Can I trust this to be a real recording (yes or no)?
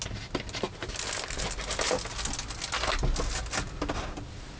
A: yes